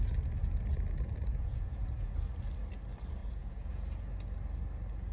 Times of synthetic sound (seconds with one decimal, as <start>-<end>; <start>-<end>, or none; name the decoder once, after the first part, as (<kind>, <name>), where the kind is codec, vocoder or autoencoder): 1.3-2.1 (vocoder, Vocos); 3.2-3.7